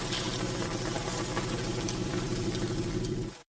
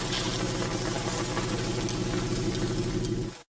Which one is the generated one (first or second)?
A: first